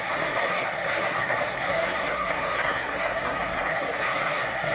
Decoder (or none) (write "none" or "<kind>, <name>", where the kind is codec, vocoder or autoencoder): codec, SNAC